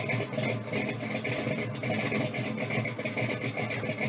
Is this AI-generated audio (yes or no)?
no